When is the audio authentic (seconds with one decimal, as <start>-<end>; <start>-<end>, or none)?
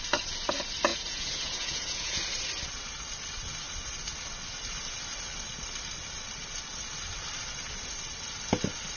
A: 0.0-0.9; 2.2-9.0